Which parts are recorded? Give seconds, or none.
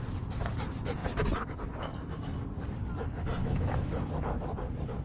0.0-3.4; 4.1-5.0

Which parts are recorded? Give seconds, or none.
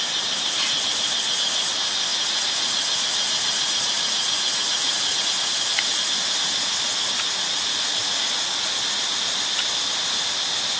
0.0-2.1; 5.5-10.8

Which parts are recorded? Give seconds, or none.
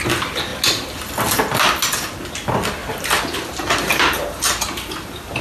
0.0-2.8; 4.9-5.4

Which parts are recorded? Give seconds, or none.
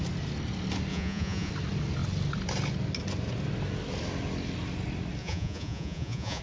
0.0-0.9; 1.5-5.2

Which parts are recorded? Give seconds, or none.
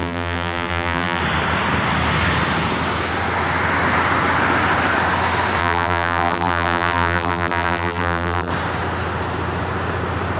1.2-5.6; 8.5-10.4